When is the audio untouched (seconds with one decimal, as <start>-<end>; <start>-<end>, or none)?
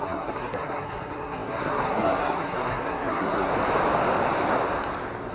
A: 3.5-5.3